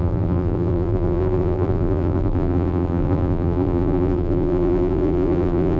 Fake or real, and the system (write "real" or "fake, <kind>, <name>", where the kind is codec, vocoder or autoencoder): fake, vocoder, BigVGAN v2